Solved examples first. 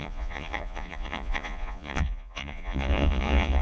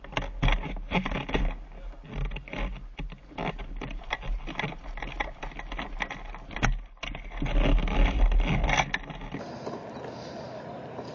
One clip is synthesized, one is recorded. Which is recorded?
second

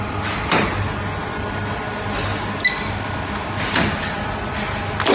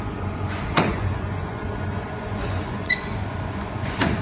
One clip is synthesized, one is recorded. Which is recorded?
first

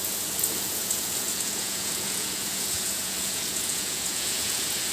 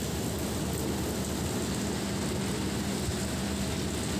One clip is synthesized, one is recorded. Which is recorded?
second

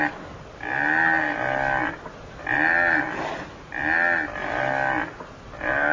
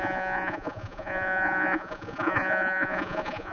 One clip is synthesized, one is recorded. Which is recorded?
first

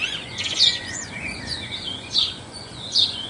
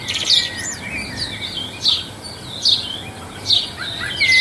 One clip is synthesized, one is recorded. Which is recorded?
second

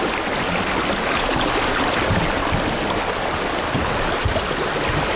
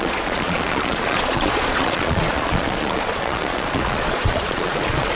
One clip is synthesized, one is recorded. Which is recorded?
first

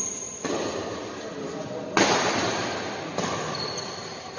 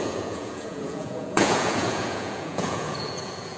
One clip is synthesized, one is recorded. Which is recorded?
first